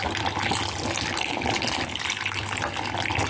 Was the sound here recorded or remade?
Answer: recorded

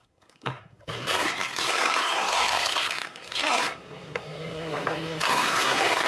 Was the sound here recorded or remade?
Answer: remade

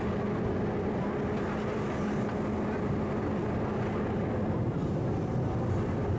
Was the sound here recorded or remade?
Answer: recorded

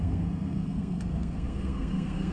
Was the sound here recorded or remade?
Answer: remade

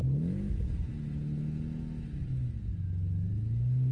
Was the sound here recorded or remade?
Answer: recorded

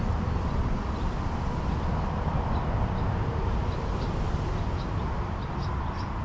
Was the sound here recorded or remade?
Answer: recorded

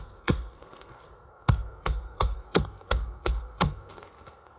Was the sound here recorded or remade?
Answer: remade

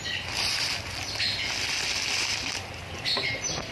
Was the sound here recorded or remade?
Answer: recorded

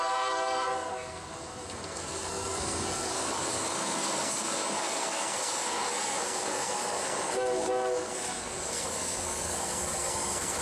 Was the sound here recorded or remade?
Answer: remade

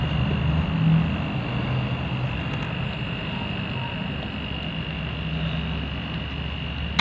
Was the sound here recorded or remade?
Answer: recorded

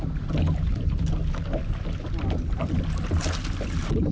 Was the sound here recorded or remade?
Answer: recorded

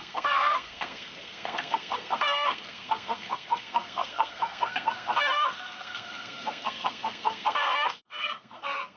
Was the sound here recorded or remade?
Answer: remade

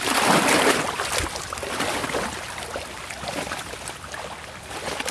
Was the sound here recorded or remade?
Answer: recorded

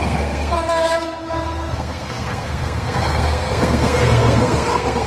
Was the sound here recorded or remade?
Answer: remade